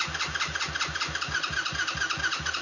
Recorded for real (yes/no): yes